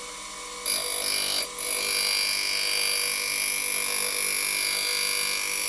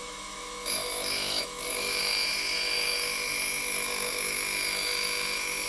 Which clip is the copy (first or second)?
second